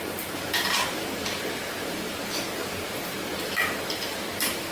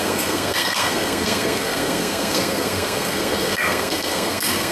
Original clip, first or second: first